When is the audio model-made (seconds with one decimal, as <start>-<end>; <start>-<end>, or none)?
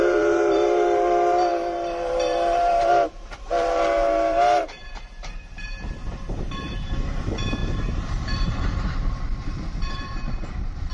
0.0-10.9